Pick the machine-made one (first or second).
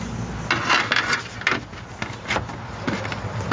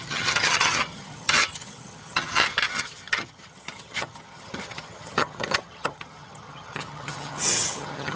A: second